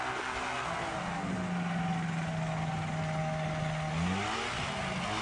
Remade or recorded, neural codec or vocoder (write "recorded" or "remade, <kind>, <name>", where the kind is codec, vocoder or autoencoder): recorded